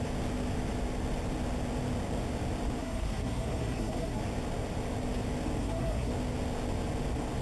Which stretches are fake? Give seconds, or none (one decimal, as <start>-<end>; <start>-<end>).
2.8-4.2; 5.6-6.1